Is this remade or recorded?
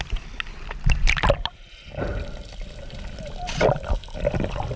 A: recorded